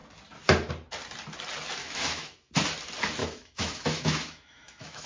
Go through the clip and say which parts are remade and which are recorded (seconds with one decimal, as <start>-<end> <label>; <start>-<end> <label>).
0.0-1.8 recorded; 1.8-2.5 remade; 2.5-3.2 recorded; 3.2-5.1 remade